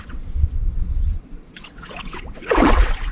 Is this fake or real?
fake